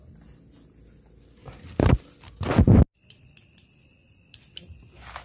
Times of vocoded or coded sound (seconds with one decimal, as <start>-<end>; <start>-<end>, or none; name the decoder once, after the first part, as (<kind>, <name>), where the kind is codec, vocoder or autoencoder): none